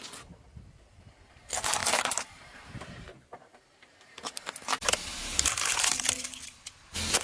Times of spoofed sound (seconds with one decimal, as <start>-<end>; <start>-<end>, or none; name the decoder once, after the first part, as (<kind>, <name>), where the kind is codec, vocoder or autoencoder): 1.8-6.1 (vocoder, BigVGAN v2)